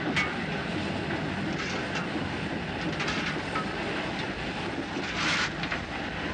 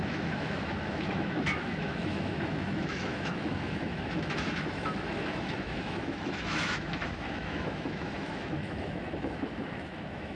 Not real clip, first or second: second